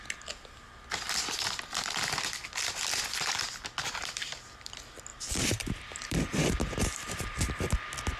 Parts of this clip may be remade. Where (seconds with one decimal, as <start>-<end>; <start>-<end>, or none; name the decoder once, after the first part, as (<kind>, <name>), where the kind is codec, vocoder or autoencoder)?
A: 5.1-7.4 (vocoder, BigVGAN v2)

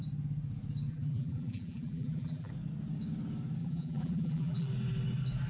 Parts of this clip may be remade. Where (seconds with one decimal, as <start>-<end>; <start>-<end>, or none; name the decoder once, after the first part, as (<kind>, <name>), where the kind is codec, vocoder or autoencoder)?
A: 0.9-2.5 (vocoder, BigVGAN v2); 3.6-4.7

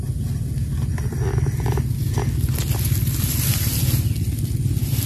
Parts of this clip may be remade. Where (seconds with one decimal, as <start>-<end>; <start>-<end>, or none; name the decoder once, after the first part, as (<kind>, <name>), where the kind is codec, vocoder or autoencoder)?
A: none

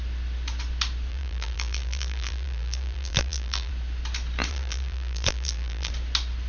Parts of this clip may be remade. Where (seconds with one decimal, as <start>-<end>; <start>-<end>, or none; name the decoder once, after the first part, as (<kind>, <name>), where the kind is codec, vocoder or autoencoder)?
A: 1.1-3.7 (vocoder, BigVGAN v2); 4.5-5.9

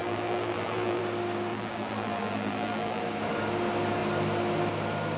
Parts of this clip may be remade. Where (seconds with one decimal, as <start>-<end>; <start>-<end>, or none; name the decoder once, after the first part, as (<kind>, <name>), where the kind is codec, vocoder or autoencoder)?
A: 0.0-1.0 (vocoder, BigVGAN v2); 1.5-3.0

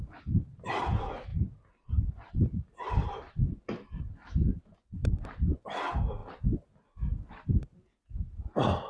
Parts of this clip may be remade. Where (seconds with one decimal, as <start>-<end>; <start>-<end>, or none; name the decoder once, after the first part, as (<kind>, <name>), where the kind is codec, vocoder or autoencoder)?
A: 1.3-4.0 (vocoder, BigVGAN v2); 5.0-5.8

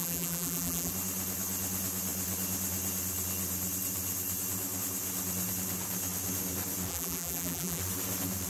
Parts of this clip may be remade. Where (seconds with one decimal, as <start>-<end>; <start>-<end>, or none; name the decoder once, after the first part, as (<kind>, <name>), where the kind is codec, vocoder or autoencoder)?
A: 0.0-0.9 (vocoder, BigVGAN v2); 6.9-7.8